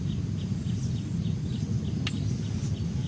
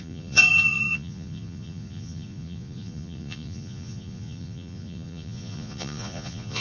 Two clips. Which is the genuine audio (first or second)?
first